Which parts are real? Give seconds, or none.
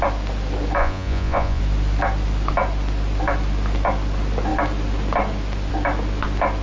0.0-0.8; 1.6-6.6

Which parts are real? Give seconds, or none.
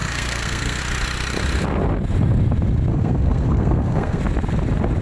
0.8-2.9; 4.2-5.0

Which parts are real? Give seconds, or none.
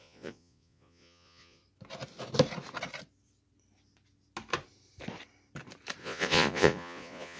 1.6-6.0